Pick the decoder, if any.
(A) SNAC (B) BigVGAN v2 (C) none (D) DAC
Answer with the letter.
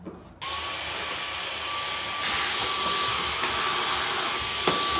C